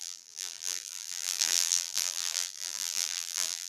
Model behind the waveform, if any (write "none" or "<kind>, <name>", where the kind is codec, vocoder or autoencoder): vocoder, BigVGAN v2